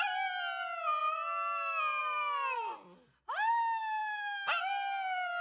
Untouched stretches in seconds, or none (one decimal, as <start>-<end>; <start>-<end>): 0.0-5.4